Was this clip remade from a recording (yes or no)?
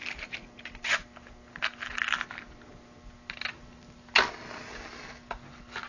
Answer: no